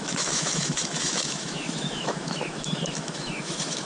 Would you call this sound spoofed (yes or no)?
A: yes